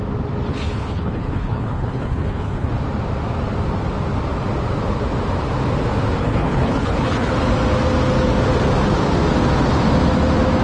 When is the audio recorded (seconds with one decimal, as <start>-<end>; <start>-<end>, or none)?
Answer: 0.0-0.5; 2.7-6.2; 7.3-10.6

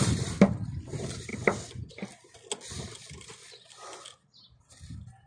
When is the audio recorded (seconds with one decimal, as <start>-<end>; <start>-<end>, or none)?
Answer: 0.0-5.3

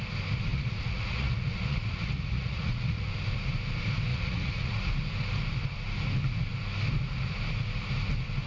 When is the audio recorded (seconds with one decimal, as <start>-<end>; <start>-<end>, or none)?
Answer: 0.0-0.5; 3.1-4.1; 4.9-8.5

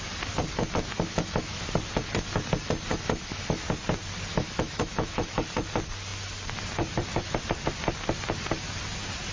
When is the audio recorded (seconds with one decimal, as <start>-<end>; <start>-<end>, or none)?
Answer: 0.0-0.9; 1.6-2.9; 3.6-4.3; 5.4-9.3

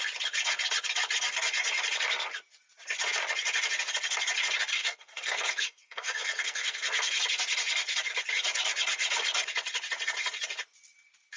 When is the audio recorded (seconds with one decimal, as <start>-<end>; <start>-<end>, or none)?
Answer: 0.0-4.8; 7.2-11.4